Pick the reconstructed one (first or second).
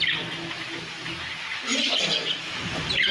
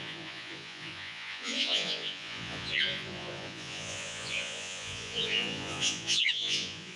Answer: second